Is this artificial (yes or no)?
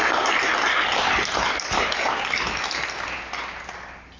no